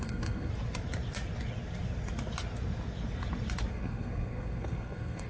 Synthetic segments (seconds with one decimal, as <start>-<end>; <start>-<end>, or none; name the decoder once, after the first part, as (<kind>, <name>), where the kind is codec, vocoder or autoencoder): 0.0-0.5 (codec, SNAC); 3.7-5.3